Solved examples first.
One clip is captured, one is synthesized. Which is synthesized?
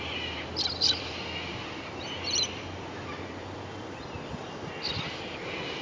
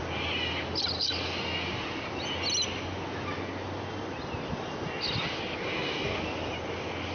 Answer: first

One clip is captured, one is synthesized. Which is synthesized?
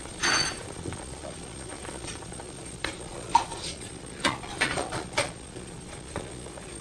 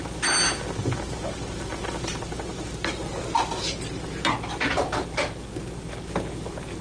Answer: first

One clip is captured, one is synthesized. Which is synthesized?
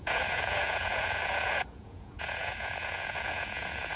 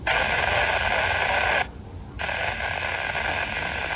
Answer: first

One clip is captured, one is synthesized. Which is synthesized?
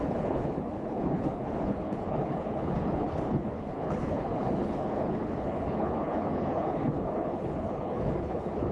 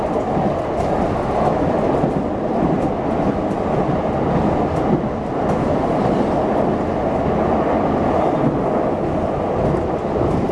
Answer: first